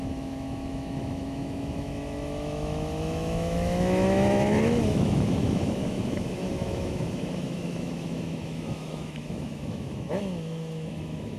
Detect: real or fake fake